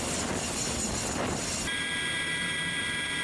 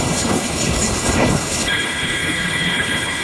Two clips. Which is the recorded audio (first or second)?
first